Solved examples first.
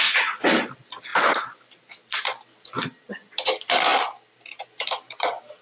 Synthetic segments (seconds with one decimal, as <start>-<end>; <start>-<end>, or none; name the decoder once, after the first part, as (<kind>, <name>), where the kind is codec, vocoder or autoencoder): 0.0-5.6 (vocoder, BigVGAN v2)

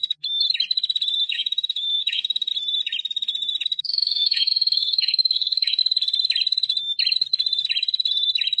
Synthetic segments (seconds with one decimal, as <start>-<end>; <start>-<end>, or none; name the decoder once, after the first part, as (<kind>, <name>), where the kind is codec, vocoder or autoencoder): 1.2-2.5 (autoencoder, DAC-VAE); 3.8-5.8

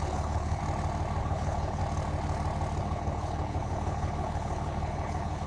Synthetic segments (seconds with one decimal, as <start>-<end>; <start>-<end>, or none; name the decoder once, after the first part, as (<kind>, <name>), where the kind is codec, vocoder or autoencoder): 0.0-0.6 (codec, HILCodec); 1.2-1.8; 2.8-5.5

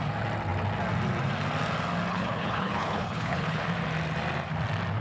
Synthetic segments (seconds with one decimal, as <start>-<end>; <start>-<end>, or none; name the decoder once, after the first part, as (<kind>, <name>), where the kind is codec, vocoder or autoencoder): 2.1-3.6 (codec, HILCodec)

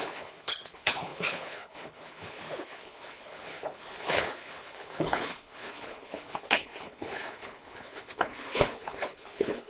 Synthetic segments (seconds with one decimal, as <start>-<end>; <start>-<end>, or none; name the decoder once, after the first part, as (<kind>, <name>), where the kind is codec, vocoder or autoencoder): 0.0-9.7 (codec, HILCodec)

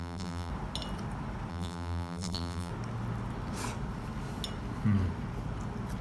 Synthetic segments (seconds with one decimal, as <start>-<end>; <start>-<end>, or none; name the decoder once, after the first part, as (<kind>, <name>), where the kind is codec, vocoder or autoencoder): 0.0-0.5 (vocoder, BigVGAN v2); 1.5-2.7

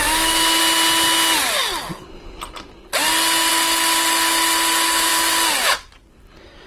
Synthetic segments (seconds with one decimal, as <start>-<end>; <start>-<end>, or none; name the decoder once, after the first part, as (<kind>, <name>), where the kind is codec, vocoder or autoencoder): 0.0-0.6 (autoencoder, DAC-VAE)